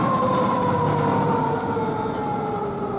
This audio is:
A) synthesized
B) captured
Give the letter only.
B